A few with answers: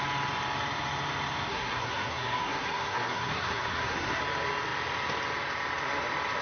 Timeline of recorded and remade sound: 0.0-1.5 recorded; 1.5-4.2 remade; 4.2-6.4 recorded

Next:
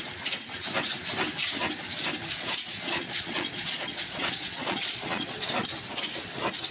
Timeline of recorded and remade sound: 0.0-2.3 recorded; 2.3-5.5 remade; 5.5-6.7 recorded

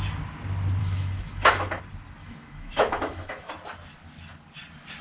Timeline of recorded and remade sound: 0.0-0.8 recorded; 0.8-1.8 remade; 1.8-2.2 recorded; 2.2-3.5 remade; 3.5-5.0 recorded

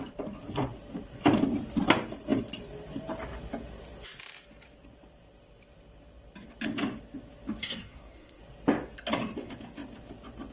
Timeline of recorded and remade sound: 0.0-7.6 recorded; 7.6-8.4 remade; 8.4-10.5 recorded

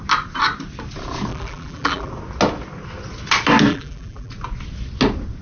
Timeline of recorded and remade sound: 0.0-1.3 recorded; 1.3-2.1 remade; 2.1-3.7 recorded; 3.7-4.3 remade; 4.3-5.4 recorded